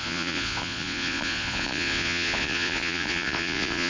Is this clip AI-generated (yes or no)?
yes